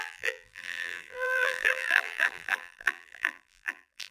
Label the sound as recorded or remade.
remade